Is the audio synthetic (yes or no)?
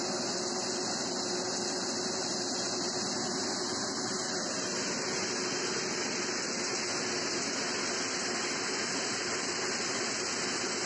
no